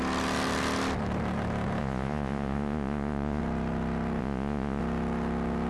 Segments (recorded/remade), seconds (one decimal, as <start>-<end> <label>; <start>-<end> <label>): 0.0-1.8 recorded; 1.8-3.4 remade; 3.4-4.2 recorded; 4.2-4.8 remade; 4.8-5.7 recorded